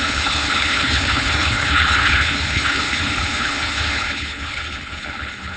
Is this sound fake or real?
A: fake